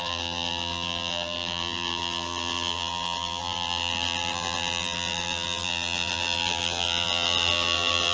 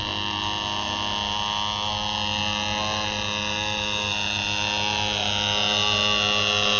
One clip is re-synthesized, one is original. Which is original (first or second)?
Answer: second